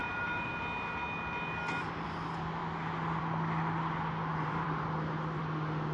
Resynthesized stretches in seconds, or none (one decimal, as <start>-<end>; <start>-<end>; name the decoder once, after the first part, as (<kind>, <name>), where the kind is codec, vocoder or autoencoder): 0.0-0.5 (vocoder, BigVGAN v2); 4.3-5.4